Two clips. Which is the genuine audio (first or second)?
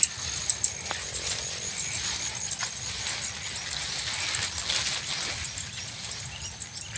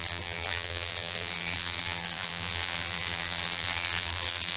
first